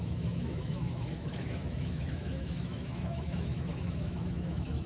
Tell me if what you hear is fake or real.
fake